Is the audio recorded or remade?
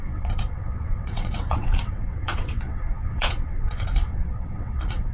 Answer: remade